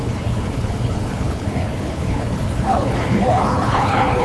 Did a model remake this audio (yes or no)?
yes